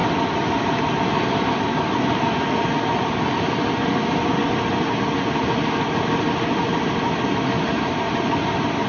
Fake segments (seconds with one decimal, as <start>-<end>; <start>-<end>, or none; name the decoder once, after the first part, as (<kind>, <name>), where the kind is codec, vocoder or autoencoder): none